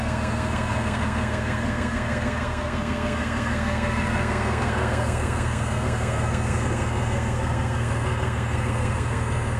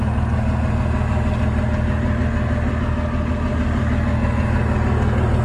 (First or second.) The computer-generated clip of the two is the first